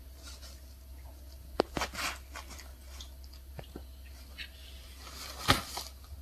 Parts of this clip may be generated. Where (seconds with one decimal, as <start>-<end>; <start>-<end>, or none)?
none